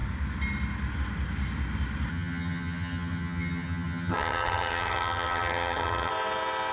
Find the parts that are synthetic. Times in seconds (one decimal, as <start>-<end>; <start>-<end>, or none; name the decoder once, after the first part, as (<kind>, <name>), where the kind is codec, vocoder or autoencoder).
2.1-6.1 (vocoder, HiFi-GAN)